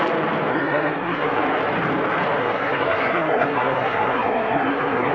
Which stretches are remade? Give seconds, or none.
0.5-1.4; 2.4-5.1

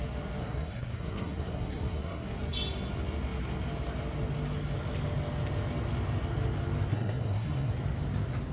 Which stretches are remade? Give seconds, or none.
0.4-2.3; 6.9-7.7

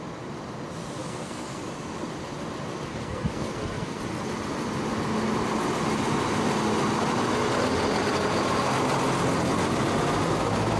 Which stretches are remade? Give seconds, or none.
1.0-1.6; 2.9-4.0

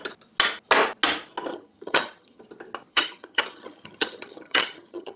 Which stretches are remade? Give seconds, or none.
1.5-2.4; 2.9-5.2

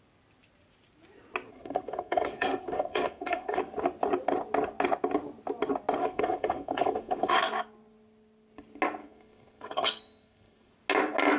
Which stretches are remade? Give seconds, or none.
1.5-3.6; 6.0-7.3; 9.0-10.7

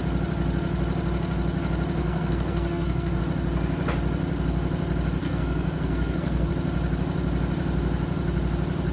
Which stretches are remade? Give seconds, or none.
2.0-3.2; 5.2-6.5

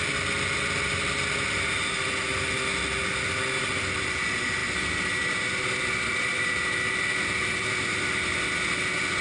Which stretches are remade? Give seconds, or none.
none

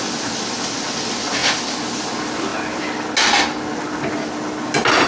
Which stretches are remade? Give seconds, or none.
none